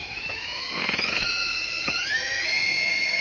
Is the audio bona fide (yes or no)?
no